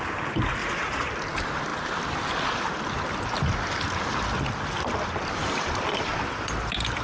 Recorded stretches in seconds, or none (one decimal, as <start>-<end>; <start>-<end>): 0.0-0.6; 1.1-7.0